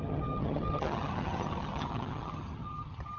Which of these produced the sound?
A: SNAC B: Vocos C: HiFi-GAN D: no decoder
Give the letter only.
C